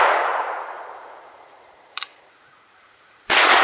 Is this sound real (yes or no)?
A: no